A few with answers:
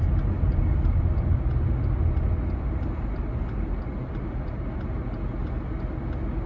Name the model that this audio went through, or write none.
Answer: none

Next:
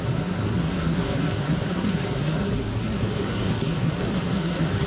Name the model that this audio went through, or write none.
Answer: codec, SNAC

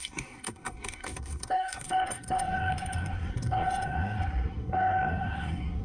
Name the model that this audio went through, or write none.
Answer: codec, SNAC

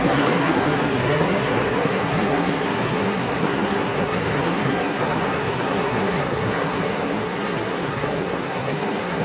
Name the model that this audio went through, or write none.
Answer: codec, SNAC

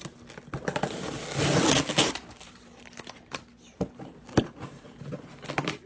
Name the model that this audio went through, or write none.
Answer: none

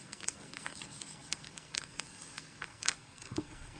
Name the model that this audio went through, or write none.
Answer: codec, SNAC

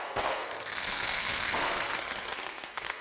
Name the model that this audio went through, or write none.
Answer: codec, SNAC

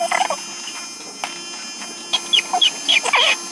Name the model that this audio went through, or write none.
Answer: none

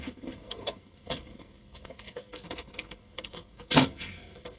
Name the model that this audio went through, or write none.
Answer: codec, SNAC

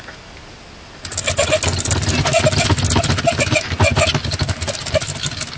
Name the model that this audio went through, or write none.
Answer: none